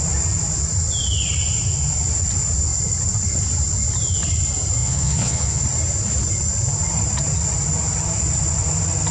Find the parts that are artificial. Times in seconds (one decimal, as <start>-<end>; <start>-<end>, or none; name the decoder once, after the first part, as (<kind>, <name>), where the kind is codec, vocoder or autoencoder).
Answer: 4.8-5.6 (vocoder, Vocos)